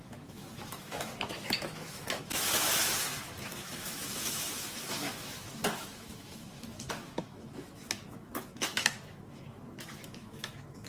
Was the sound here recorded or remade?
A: remade